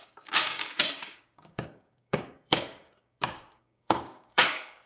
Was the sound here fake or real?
fake